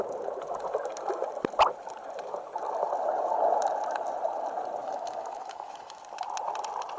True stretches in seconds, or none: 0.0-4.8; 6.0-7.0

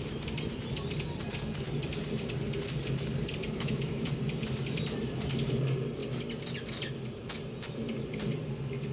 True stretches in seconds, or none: 0.0-3.4; 4.1-8.9

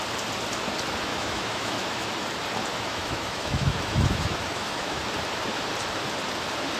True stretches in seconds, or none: 0.0-1.1; 2.1-2.7; 5.0-6.8

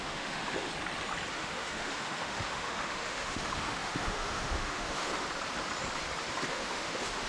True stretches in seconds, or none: 0.7-1.3; 5.1-6.5